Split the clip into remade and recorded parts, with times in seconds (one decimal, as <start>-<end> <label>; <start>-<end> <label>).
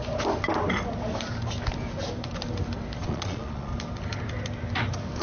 0.0-3.0 recorded; 3.0-3.7 remade; 3.7-5.2 recorded